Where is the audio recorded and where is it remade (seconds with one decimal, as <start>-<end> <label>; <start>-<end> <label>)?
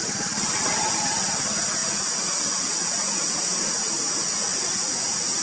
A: 0.0-1.8 recorded; 1.8-3.7 remade; 3.7-5.4 recorded